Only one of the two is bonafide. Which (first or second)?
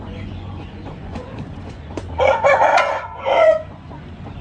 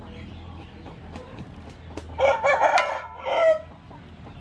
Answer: second